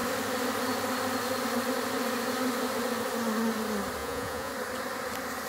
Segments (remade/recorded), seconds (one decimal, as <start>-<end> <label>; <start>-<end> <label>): 0.0-4.0 recorded; 4.0-4.5 remade; 4.5-5.5 recorded